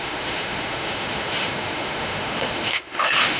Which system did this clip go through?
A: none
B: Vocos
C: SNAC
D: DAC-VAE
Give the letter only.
D